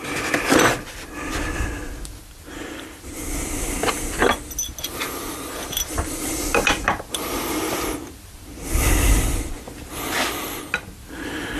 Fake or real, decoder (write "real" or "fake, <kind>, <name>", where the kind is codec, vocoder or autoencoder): real